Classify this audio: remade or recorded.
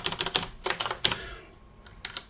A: recorded